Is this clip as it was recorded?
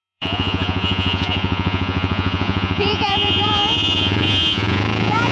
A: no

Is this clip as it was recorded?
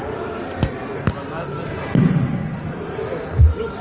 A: yes